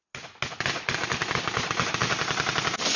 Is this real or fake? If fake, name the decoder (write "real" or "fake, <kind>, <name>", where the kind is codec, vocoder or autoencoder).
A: real